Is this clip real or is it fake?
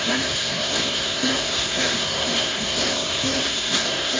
fake